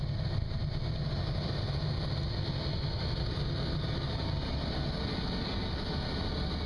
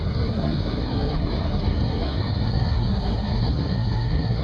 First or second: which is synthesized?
second